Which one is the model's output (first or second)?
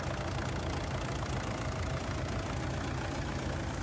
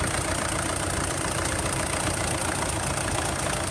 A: second